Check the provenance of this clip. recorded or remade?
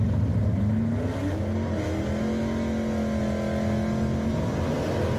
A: recorded